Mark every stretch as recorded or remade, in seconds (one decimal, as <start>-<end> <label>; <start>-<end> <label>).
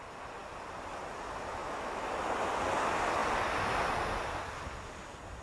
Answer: 0.0-1.6 recorded; 1.6-2.1 remade; 2.1-5.4 recorded